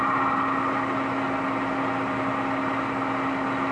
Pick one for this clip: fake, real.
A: real